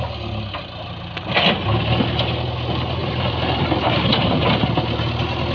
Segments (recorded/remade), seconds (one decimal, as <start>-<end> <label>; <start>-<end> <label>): 0.0-3.0 recorded; 3.0-4.4 remade; 4.4-5.5 recorded